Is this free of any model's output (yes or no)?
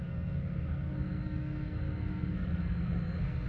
no